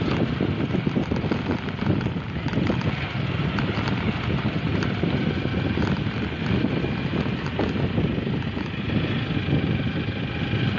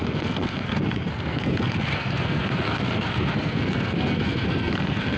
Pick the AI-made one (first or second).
second